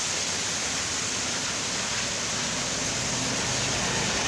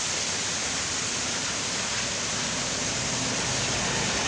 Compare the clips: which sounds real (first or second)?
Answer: first